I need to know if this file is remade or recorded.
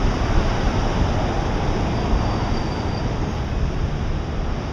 recorded